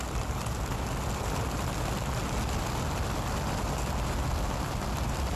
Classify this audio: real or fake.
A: real